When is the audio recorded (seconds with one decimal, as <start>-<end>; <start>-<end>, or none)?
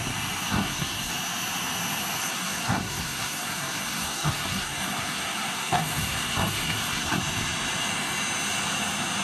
0.0-0.5; 1.1-2.2; 7.2-9.2